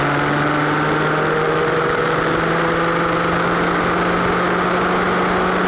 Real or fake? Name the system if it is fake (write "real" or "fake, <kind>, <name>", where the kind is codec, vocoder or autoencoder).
real